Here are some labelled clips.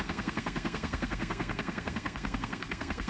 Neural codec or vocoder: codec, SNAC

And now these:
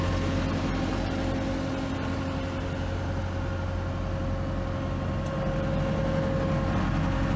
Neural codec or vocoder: none